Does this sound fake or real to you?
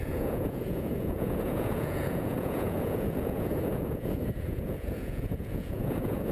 fake